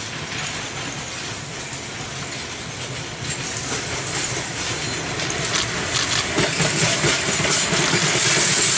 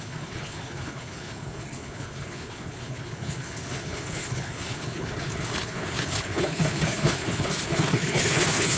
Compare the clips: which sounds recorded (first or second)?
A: first